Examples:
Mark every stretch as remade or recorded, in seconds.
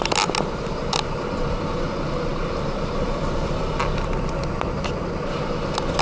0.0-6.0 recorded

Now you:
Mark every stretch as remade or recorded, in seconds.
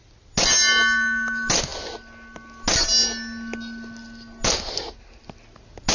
0.0-5.9 recorded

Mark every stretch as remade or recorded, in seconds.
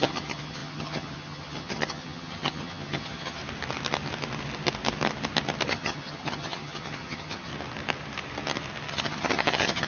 0.0-3.4 remade; 3.4-5.7 recorded; 5.7-7.5 remade; 7.5-8.9 recorded; 8.9-9.9 remade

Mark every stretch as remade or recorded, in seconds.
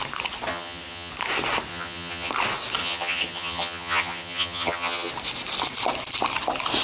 0.0-0.5 recorded; 0.5-1.1 remade; 1.1-1.7 recorded; 1.7-2.3 remade; 2.3-2.8 recorded; 2.8-5.1 remade; 5.1-6.8 recorded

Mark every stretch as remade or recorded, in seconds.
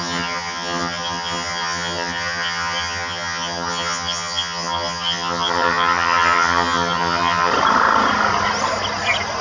0.0-7.5 remade; 7.5-9.4 recorded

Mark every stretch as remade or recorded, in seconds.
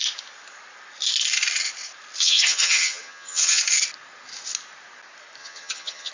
0.0-2.2 recorded; 2.2-3.6 remade; 3.6-5.4 recorded; 5.4-6.1 remade